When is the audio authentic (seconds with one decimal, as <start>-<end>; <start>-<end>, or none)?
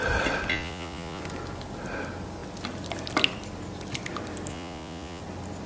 0.0-0.5; 1.2-4.5; 5.2-5.7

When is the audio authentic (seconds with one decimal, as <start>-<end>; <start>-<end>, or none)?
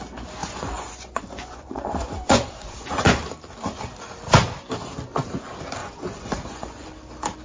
0.0-0.4; 3.2-5.8; 6.9-7.4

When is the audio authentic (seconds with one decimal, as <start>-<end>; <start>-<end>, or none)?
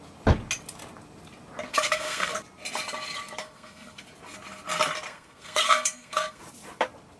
0.0-1.7; 2.3-3.4; 4.0-5.1; 6.4-7.2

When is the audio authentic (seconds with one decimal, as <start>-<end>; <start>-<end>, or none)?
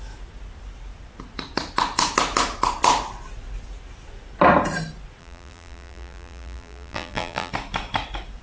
0.0-5.2; 7.5-8.4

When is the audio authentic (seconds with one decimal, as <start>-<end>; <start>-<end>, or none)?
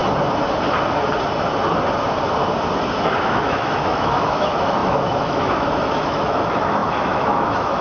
0.0-3.2